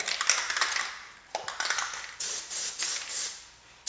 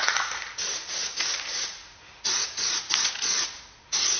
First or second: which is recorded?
first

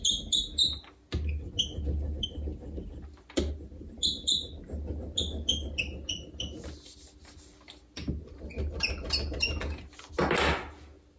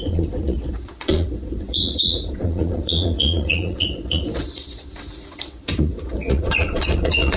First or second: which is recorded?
first